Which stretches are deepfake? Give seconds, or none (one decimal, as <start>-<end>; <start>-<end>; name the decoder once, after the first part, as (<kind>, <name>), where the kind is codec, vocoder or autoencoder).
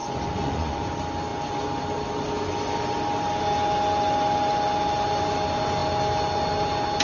0.0-0.9 (vocoder, Vocos)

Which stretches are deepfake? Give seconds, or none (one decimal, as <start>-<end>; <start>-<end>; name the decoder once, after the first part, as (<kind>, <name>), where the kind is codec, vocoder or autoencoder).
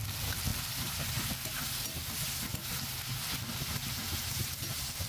none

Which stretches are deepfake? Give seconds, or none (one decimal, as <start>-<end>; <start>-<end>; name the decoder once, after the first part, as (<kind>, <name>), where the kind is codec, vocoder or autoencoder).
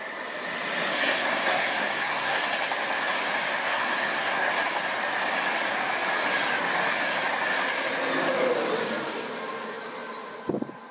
0.9-2.4 (codec, SNAC); 3.6-4.5